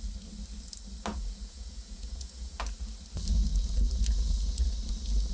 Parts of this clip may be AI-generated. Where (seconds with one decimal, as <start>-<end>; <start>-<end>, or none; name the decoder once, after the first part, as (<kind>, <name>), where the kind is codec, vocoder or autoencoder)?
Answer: 1.1-2.6 (vocoder, Vocos)